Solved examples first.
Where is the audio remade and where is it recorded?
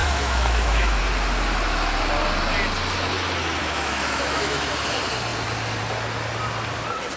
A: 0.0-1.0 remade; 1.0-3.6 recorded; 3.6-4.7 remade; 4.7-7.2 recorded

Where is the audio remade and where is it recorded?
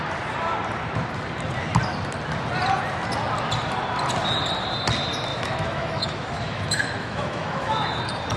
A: 0.0-5.3 recorded; 5.3-8.0 remade; 8.0-8.4 recorded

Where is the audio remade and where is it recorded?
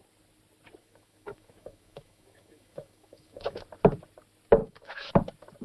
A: 0.0-0.8 recorded; 0.8-3.6 remade; 3.6-4.6 recorded; 4.6-5.1 remade; 5.1-5.6 recorded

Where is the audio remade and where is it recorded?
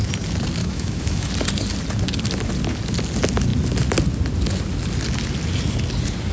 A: 0.0-0.6 recorded; 0.6-1.3 remade; 1.3-6.3 recorded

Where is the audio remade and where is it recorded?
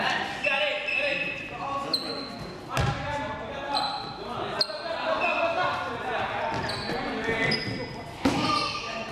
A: 0.0-9.1 recorded